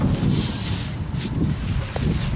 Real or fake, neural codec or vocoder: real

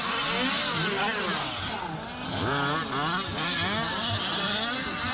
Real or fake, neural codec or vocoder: real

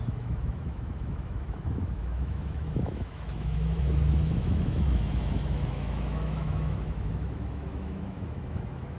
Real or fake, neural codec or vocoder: fake, autoencoder, DAC-VAE